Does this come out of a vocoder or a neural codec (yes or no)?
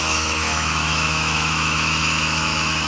yes